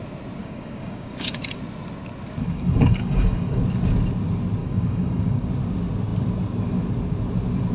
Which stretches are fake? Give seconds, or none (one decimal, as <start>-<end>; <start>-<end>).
0.4-1.6; 2.4-3.6; 4.6-5.5